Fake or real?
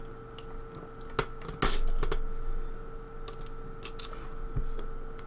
real